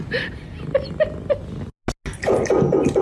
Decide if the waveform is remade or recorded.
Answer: recorded